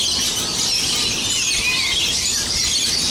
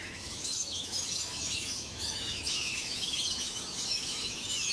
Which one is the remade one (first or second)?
second